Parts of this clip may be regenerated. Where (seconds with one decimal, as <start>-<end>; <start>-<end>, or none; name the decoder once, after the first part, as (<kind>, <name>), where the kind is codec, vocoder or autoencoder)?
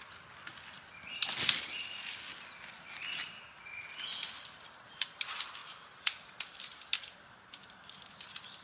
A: 0.5-2.0 (vocoder, BigVGAN v2); 5.6-6.6